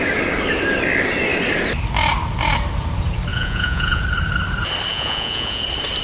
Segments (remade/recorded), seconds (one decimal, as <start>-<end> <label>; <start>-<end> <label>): 0.0-3.3 recorded; 3.3-4.0 remade; 4.0-4.9 recorded; 4.9-5.6 remade; 5.6-6.0 recorded